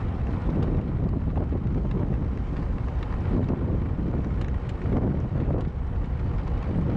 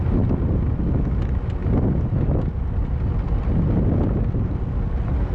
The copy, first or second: first